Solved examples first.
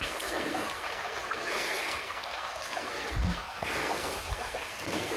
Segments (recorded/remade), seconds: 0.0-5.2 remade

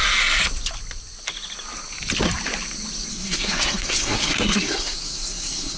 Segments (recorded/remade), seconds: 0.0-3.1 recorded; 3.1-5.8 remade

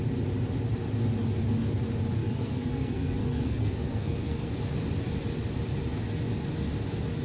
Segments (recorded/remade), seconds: 0.0-2.2 recorded; 2.2-4.5 remade; 4.5-7.2 recorded

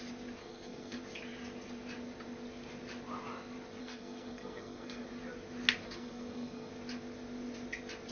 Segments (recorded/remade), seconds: 0.0-0.4 recorded; 0.4-1.0 remade; 1.0-3.8 recorded; 3.8-5.1 remade; 5.1-5.8 recorded; 5.8-6.7 remade; 6.7-8.1 recorded

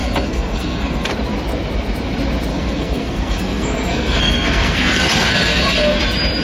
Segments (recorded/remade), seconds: 0.0-1.1 remade; 1.1-2.5 recorded; 2.5-6.0 remade; 6.0-6.4 recorded

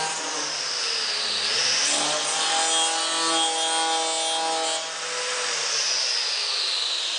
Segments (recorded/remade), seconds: 0.0-7.2 recorded

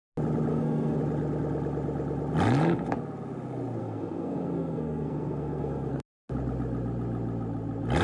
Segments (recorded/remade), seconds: 0.0-0.5 recorded; 0.5-1.0 remade; 1.0-3.8 recorded; 3.8-6.0 remade; 6.0-8.0 recorded

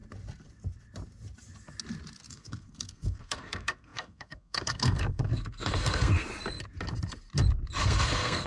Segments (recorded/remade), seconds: 0.0-2.3 recorded; 2.3-6.3 remade; 6.3-7.8 recorded; 7.8-8.5 remade